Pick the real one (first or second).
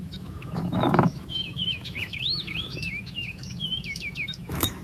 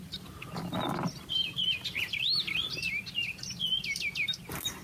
second